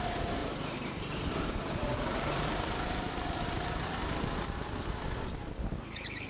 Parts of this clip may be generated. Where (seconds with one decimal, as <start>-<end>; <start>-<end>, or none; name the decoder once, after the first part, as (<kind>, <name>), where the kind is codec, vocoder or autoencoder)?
0.4-4.0 (vocoder, BigVGAN v2)